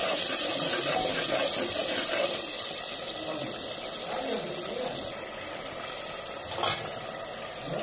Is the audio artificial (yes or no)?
no